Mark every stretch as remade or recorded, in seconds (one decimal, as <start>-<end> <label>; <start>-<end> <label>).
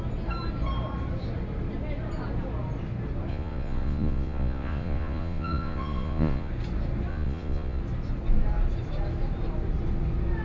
0.0-3.3 recorded; 3.3-6.5 remade; 6.5-7.1 recorded; 7.1-7.8 remade; 7.8-10.4 recorded